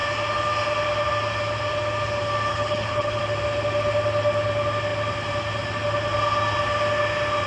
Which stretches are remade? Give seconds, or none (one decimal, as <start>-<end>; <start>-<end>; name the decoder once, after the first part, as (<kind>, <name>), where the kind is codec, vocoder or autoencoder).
2.5-3.2 (codec, HILCodec)